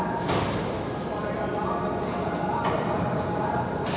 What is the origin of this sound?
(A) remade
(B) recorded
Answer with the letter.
A